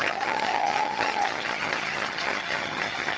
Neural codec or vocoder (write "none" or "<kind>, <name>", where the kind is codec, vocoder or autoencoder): vocoder, HiFi-GAN